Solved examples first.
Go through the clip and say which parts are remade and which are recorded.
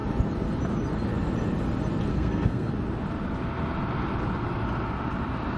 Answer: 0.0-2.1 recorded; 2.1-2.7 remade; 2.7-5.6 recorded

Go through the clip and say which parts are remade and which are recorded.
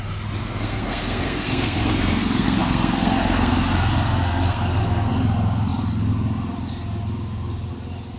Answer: 0.0-0.4 recorded; 0.4-5.1 remade; 5.1-8.2 recorded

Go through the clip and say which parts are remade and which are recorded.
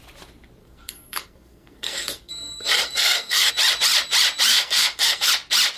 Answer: 0.0-0.6 recorded; 0.6-3.5 remade; 3.5-4.5 recorded; 4.5-5.3 remade; 5.3-5.8 recorded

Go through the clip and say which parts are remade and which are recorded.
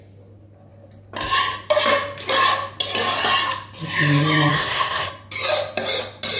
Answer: 0.0-4.5 recorded; 4.5-5.1 remade; 5.1-6.4 recorded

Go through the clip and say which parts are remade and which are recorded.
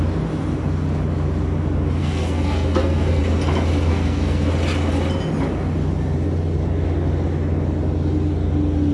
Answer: 0.0-2.0 recorded; 2.0-3.2 remade; 3.2-3.9 recorded; 3.9-4.5 remade; 4.5-8.9 recorded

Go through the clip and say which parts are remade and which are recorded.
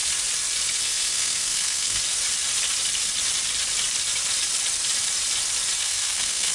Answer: 0.0-0.8 recorded; 0.8-2.0 remade; 2.0-5.8 recorded; 5.8-6.5 remade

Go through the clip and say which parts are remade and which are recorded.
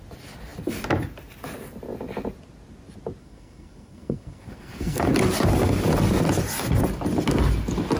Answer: 0.0-3.2 recorded; 3.2-5.1 remade; 5.1-8.0 recorded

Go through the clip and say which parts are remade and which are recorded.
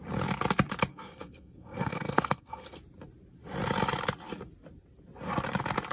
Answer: 0.0-0.9 recorded; 0.9-2.8 remade; 2.8-5.9 recorded